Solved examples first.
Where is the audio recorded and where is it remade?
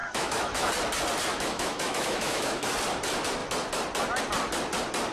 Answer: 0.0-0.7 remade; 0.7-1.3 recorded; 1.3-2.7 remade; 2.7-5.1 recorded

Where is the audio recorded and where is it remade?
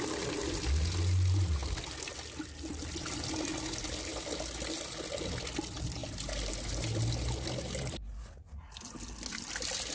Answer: 0.0-9.9 recorded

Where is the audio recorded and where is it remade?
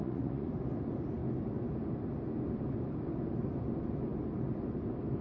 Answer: 0.0-0.5 remade; 0.5-5.2 recorded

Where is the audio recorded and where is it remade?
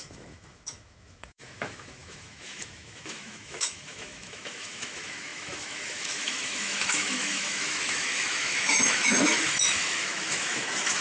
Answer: 0.0-11.0 remade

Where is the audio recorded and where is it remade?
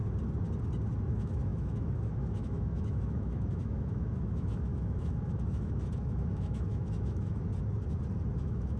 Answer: 0.0-1.1 recorded; 1.1-7.5 remade; 7.5-8.4 recorded; 8.4-8.8 remade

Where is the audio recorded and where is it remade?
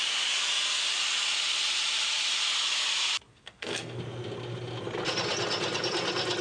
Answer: 0.0-3.3 recorded; 3.3-4.0 remade; 4.0-6.4 recorded